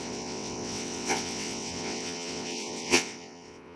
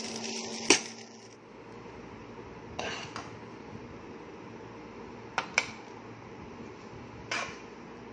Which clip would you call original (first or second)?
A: second